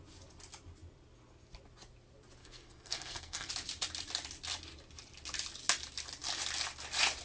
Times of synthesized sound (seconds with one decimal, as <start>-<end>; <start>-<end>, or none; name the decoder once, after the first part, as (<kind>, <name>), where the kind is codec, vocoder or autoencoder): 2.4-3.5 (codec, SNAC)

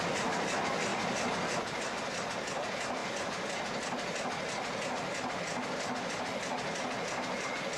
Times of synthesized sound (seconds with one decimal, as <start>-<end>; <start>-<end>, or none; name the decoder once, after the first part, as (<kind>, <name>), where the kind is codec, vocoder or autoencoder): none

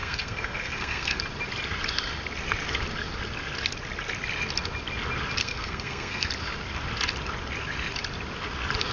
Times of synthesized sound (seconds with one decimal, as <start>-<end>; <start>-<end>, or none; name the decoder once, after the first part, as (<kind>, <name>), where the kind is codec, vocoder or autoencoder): 0.0-1.2 (codec, SNAC); 5.4-6.3

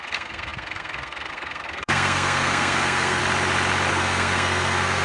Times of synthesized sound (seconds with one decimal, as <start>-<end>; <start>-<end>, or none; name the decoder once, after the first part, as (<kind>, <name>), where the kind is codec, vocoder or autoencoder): 0.0-3.2 (codec, SNAC); 3.9-5.0

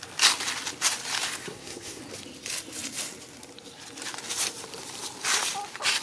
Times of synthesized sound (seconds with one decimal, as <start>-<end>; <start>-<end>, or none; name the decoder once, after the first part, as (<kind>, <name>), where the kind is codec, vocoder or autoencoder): 1.4-2.0 (codec, SNAC)

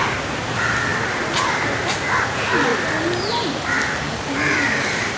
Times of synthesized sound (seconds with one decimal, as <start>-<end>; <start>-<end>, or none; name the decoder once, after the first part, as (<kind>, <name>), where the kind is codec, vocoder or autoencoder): none

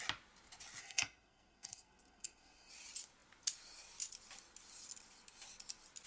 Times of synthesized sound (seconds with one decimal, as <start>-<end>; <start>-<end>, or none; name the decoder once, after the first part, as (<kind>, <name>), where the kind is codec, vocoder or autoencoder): 0.8-2.7 (codec, SNAC)